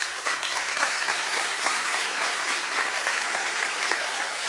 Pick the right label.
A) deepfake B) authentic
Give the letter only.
A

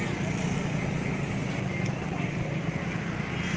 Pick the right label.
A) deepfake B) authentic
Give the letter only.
B